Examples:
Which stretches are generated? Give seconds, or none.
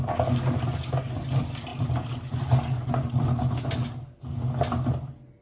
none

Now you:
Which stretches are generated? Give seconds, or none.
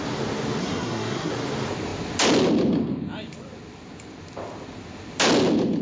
0.6-1.3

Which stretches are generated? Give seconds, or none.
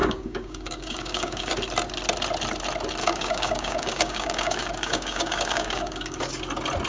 0.0-1.5; 3.0-6.2